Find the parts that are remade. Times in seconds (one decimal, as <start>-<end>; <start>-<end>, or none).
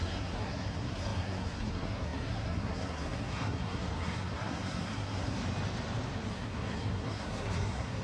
0.0-5.4; 6.3-8.0